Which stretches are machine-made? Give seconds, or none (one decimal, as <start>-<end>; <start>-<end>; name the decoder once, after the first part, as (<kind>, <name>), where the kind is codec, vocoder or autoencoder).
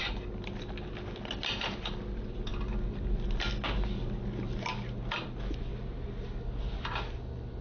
none